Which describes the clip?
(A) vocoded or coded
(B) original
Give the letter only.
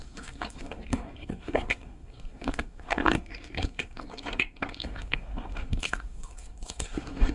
A